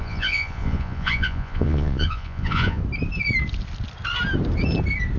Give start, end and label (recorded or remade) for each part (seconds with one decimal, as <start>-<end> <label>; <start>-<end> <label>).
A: 0.0-2.8 remade; 2.8-5.2 recorded